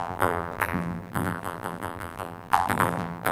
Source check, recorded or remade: remade